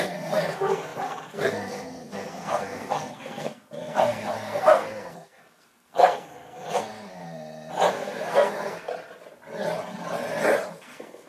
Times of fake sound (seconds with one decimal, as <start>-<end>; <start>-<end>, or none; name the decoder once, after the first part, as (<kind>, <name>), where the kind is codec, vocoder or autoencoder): 0.0-7.2 (codec, SNAC); 7.9-8.9; 10.7-11.3